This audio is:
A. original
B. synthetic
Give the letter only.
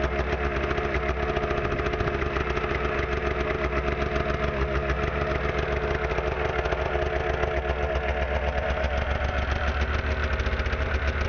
A